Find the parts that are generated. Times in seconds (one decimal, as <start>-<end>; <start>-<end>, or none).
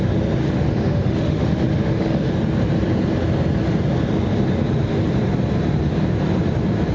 0.4-2.3